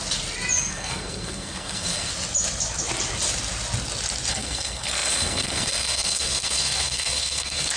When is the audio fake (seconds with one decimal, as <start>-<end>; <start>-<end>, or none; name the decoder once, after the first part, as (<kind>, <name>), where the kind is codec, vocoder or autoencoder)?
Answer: 0.6-2.1 (codec, SNAC); 4.3-7.8